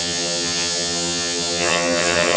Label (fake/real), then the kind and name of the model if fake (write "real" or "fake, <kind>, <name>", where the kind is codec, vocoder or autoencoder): fake, vocoder, HiFi-GAN